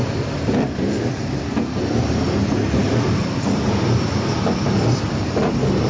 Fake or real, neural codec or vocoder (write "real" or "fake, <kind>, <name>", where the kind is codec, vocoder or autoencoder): fake, vocoder, BigVGAN v2